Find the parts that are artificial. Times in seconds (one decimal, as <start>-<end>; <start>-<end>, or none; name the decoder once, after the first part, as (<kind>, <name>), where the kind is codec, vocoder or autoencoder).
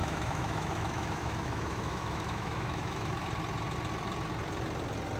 0.0-3.1 (autoencoder, DAC-VAE)